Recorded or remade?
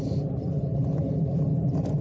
recorded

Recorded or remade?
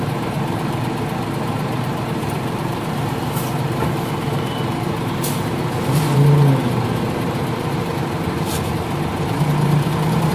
remade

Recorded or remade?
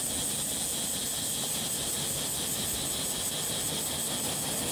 recorded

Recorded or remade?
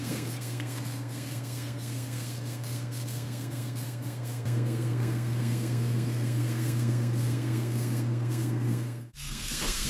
remade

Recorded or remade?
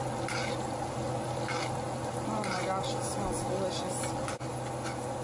recorded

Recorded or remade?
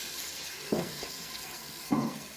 remade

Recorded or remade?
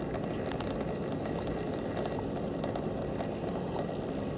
recorded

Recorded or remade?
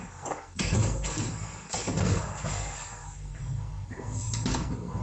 remade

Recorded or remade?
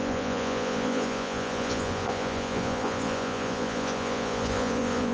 remade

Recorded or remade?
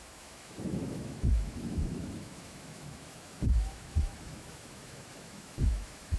remade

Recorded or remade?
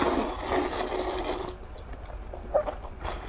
recorded